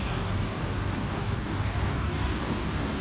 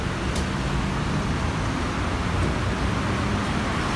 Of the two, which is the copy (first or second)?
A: first